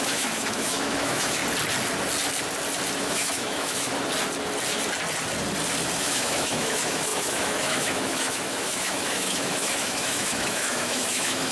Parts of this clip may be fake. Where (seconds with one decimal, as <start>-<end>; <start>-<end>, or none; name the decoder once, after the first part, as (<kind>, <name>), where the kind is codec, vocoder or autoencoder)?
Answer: 0.0-1.4 (autoencoder, DAC-VAE); 3.0-3.9; 6.0-11.5